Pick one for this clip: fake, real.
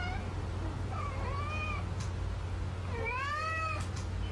real